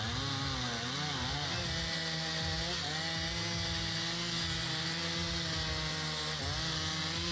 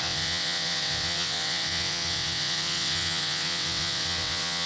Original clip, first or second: first